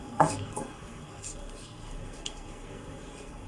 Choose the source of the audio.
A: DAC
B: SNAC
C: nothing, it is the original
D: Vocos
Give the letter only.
B